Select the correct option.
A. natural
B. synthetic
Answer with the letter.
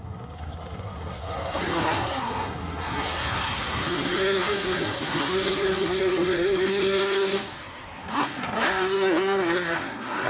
B